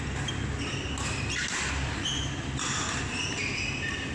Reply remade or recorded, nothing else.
recorded